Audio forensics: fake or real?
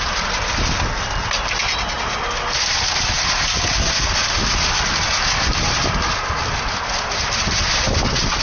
real